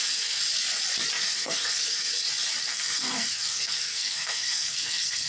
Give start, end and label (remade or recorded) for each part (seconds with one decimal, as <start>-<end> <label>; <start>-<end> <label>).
0.0-0.4 remade; 0.4-1.2 recorded; 1.2-2.1 remade; 2.1-2.7 recorded; 2.7-5.3 remade

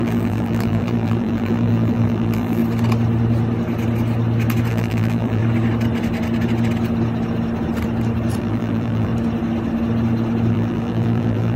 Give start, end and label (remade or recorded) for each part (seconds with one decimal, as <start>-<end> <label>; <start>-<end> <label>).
0.0-2.6 remade; 2.6-4.7 recorded; 4.7-5.4 remade; 5.4-8.4 recorded; 8.4-9.1 remade; 9.1-10.5 recorded; 10.5-11.6 remade